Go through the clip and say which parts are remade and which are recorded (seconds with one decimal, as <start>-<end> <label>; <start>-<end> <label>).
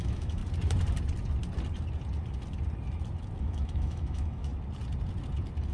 0.0-0.4 remade; 0.4-3.4 recorded; 3.4-4.5 remade; 4.5-5.7 recorded